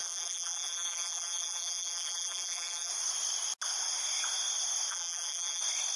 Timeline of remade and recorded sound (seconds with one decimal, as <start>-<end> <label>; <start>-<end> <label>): 0.0-2.9 remade; 2.9-4.9 recorded; 4.9-5.6 remade; 5.6-6.0 recorded